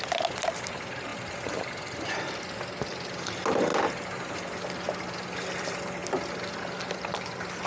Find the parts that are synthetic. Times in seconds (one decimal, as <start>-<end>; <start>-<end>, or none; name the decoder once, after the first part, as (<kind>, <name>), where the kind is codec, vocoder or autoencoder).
none